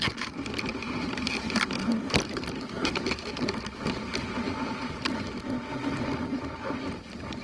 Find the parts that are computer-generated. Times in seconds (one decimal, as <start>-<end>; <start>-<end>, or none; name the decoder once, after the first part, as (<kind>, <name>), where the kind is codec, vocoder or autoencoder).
0.7-3.3 (vocoder, BigVGAN v2)